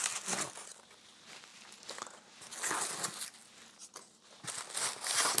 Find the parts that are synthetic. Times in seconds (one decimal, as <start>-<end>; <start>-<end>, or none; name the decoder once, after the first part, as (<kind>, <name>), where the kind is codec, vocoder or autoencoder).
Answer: none

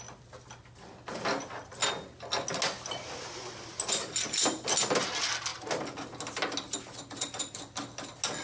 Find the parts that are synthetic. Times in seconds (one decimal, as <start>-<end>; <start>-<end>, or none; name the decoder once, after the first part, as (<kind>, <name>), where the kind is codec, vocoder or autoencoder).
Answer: none

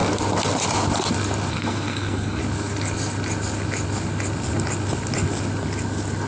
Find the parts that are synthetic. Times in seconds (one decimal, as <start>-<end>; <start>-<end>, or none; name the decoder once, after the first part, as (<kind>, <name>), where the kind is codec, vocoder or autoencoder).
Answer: 1.5-2.4 (codec, SNAC)

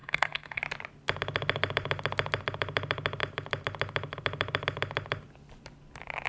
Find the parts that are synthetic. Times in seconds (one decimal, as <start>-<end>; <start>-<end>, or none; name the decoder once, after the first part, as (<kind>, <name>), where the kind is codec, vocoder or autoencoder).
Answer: 0.0-0.6 (codec, SNAC)

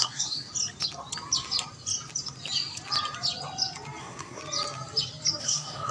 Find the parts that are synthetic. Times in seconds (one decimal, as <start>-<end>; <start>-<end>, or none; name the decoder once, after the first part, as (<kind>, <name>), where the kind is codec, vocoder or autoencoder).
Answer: 0.0-0.5 (codec, SNAC); 4.0-4.4; 5.4-5.9

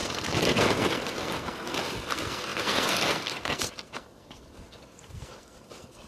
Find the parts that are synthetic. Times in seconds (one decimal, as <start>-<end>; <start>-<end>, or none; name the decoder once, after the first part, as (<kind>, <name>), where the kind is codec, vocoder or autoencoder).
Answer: 0.0-6.1 (codec, SNAC)

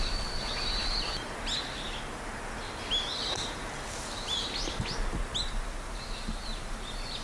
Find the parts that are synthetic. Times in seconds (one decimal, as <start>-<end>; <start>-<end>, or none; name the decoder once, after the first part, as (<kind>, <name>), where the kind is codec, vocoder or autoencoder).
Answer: none

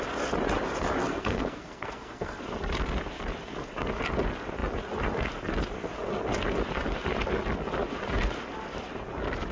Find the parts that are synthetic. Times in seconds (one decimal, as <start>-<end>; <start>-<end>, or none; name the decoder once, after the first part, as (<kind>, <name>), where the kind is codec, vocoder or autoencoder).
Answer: 1.0-2.4 (codec, SNAC)